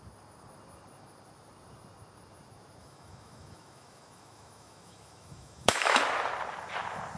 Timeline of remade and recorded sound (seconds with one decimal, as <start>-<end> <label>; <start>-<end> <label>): 0.0-2.8 recorded; 2.8-6.0 remade; 6.0-7.2 recorded